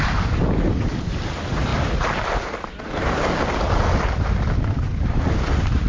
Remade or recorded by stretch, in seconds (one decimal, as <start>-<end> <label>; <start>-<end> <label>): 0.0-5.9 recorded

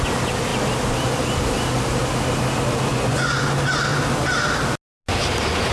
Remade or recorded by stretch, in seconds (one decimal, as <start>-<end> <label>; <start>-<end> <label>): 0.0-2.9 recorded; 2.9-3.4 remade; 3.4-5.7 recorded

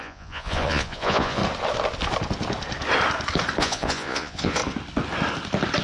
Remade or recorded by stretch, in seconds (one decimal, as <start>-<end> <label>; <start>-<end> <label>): 0.0-1.4 remade; 1.4-3.6 recorded; 3.6-4.6 remade; 4.6-5.8 recorded

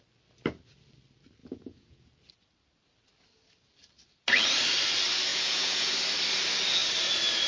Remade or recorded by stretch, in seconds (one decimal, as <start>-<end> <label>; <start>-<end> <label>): 0.0-1.4 recorded; 1.4-2.1 remade; 2.1-5.3 recorded; 5.3-5.9 remade; 5.9-7.5 recorded

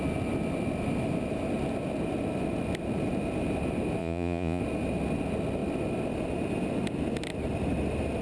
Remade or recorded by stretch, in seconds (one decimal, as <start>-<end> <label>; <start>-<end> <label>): 0.0-4.0 recorded; 4.0-4.6 remade; 4.6-8.2 recorded

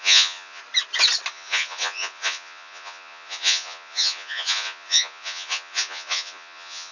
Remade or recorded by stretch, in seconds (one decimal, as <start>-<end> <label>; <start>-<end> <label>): 0.0-0.6 remade; 0.6-1.3 recorded; 1.3-6.9 remade